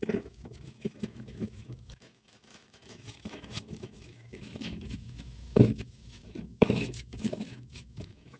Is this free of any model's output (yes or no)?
no